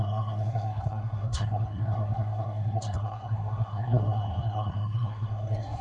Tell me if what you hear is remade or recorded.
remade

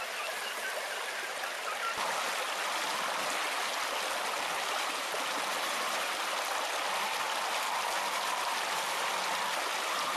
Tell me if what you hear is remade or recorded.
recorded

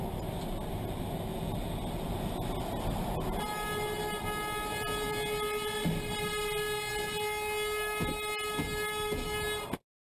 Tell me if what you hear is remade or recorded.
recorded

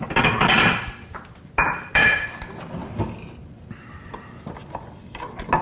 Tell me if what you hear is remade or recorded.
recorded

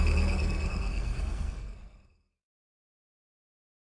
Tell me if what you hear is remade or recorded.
remade